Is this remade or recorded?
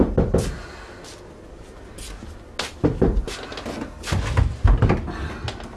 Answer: recorded